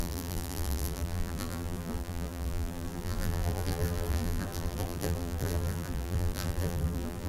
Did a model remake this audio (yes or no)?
yes